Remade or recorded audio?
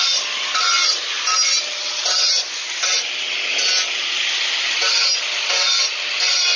recorded